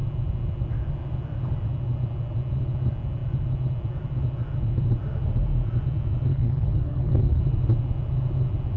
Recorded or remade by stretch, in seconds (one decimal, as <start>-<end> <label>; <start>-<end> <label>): 0.0-6.3 recorded; 6.3-7.4 remade; 7.4-8.8 recorded